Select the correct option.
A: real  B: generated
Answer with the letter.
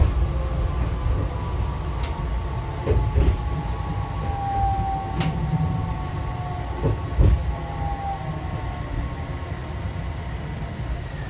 A